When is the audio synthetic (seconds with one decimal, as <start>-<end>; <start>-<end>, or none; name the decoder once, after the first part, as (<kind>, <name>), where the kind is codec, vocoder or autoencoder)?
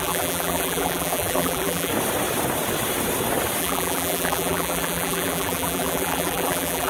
0.0-1.9 (vocoder, BigVGAN v2); 3.6-6.9